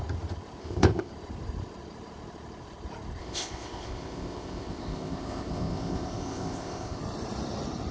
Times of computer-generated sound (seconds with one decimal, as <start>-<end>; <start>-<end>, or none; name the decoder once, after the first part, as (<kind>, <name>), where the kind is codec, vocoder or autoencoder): 0.6-1.1 (codec, ZipCodec); 3.2-7.0